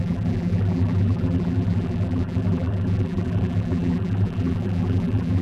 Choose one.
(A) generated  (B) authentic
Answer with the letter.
A